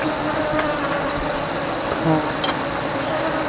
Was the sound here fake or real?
real